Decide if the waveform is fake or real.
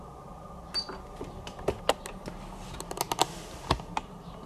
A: real